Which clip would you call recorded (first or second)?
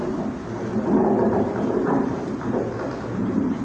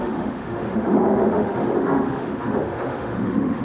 first